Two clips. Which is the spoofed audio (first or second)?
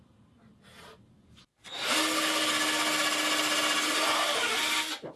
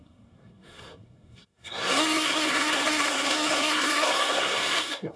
second